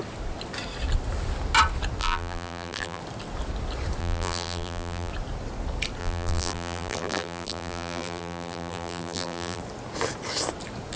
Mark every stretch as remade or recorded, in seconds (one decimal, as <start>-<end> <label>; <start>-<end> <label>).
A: 0.0-2.0 recorded; 2.0-3.0 remade; 3.0-4.0 recorded; 4.0-5.1 remade; 5.1-6.0 recorded; 6.0-9.6 remade; 9.6-11.0 recorded